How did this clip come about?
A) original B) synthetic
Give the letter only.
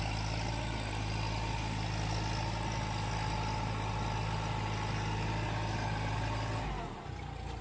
A